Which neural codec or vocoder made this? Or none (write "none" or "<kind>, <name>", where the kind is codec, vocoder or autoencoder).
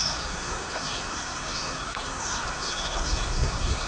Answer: codec, SNAC